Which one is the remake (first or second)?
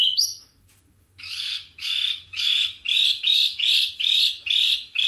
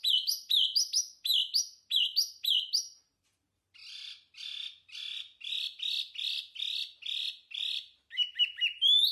first